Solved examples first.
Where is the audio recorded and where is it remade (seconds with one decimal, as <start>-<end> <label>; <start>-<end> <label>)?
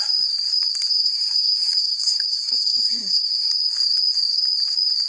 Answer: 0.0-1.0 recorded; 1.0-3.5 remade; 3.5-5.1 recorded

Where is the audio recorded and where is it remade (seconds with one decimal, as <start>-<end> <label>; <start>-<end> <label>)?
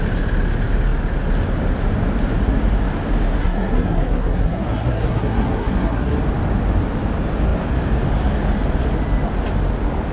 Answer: 0.0-3.4 recorded; 3.4-6.2 remade; 6.2-10.1 recorded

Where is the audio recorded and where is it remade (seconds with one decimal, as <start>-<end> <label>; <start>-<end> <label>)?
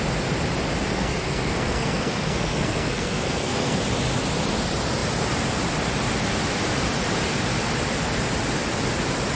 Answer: 0.0-0.9 recorded; 0.9-3.8 remade; 3.8-9.3 recorded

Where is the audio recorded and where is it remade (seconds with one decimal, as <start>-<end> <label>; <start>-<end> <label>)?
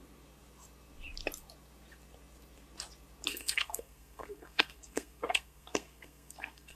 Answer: 0.0-3.3 recorded; 3.3-6.8 remade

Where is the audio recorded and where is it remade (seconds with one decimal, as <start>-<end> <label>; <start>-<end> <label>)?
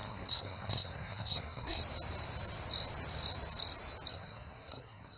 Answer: 0.0-1.8 remade; 1.8-4.1 recorded; 4.1-5.2 remade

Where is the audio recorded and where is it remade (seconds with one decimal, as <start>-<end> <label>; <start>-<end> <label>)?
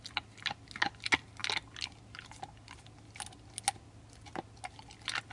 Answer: 0.0-5.3 recorded